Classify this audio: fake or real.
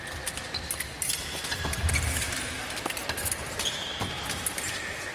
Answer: real